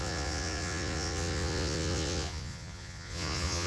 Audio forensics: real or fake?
fake